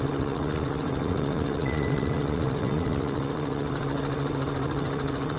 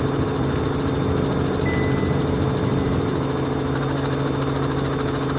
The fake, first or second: first